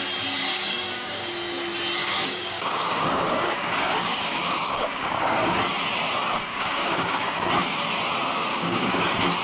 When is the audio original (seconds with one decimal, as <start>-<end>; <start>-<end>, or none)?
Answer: 0.0-0.5; 1.3-2.0; 5.6-6.5; 7.5-8.5; 9.0-9.4